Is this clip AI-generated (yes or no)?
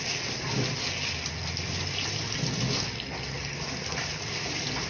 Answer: no